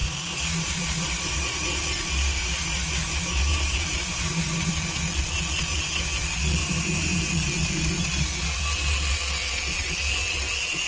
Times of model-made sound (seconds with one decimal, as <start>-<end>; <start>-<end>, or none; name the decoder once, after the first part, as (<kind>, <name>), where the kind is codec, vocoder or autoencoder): 0.0-4.7 (vocoder, BigVGAN v2); 6.6-7.2